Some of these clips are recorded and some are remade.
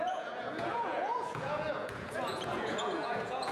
remade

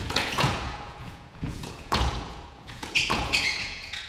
remade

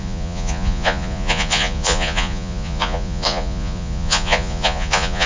remade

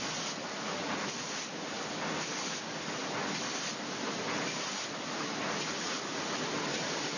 recorded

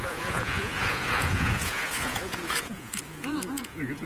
remade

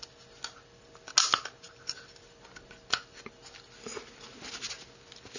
recorded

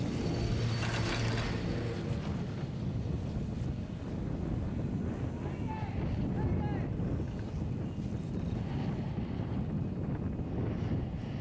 recorded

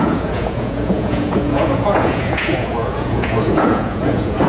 remade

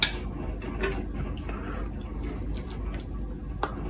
recorded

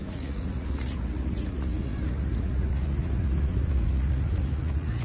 remade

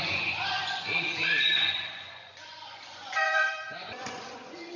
remade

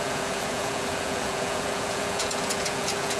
remade